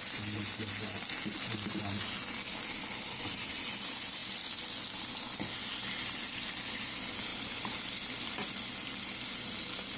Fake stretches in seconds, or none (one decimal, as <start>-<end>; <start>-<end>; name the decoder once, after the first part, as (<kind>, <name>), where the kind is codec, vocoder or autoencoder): none